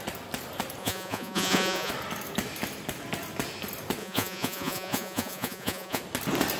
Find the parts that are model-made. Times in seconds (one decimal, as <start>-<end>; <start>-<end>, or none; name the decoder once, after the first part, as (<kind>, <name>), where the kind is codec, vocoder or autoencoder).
0.8-1.9 (vocoder, Vocos); 4.0-6.0